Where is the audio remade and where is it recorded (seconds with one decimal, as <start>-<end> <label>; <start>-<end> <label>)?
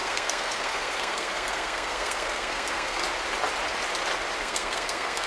0.0-3.0 remade; 3.0-4.4 recorded; 4.4-5.3 remade